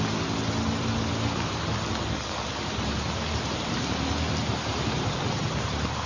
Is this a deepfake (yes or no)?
no